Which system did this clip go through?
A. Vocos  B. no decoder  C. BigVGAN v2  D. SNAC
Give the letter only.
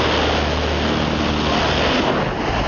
B